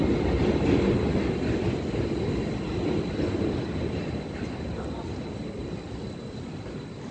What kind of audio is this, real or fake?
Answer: real